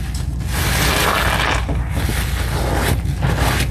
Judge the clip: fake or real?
real